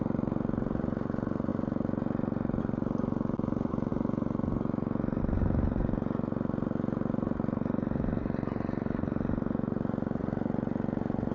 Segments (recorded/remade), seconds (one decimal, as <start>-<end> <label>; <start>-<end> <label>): 0.0-11.3 recorded